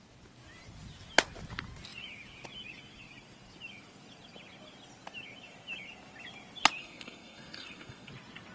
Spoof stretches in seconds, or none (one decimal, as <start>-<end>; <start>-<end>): 6.8-8.1